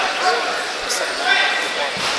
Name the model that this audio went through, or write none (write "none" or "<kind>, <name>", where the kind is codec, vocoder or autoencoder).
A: none